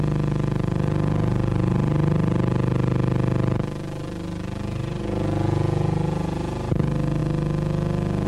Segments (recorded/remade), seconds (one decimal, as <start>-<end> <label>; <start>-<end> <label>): 0.0-8.3 recorded